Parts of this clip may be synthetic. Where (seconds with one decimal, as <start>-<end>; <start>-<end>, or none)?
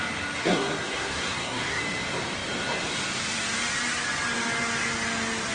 0.4-1.8